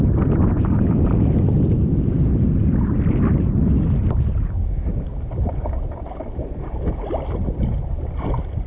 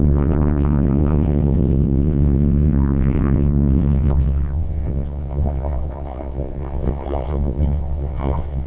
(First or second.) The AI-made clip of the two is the second